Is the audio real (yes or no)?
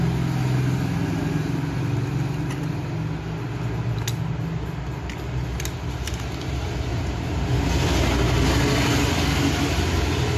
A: yes